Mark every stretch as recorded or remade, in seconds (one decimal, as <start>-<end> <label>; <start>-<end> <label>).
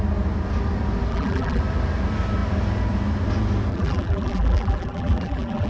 0.0-1.1 recorded; 1.1-1.6 remade; 1.6-3.7 recorded; 3.7-5.7 remade